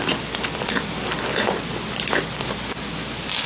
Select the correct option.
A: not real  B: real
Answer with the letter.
B